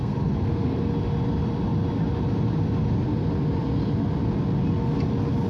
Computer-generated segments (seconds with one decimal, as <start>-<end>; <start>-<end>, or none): 0.0-0.9